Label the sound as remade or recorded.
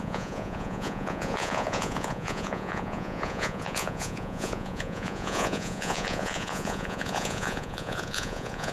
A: remade